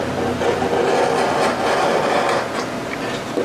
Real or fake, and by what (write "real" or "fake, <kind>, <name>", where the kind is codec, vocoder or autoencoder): real